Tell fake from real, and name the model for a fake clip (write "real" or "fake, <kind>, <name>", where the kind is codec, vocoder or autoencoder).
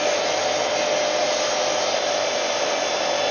real